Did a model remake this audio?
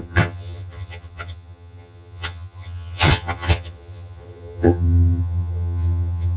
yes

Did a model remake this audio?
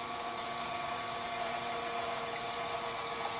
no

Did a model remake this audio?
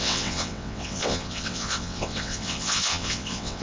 yes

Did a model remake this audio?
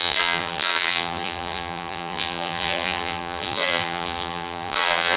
yes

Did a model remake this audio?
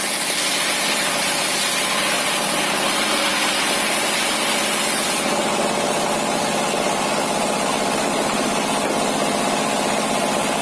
no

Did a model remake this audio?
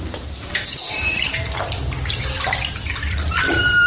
yes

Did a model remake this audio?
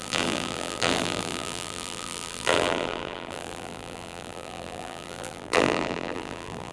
yes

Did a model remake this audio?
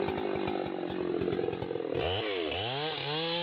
no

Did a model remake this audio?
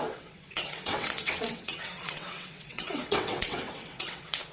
yes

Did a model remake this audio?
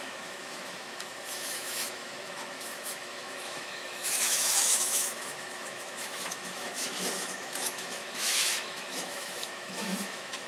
yes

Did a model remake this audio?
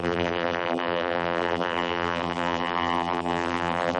yes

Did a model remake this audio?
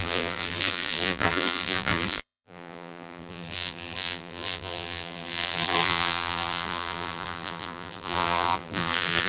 yes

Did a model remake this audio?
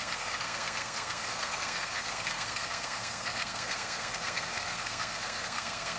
yes